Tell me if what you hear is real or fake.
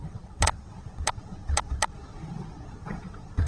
fake